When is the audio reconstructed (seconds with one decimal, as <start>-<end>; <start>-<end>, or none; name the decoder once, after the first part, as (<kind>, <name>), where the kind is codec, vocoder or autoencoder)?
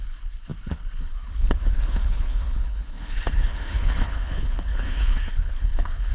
0.0-6.1 (codec, HILCodec)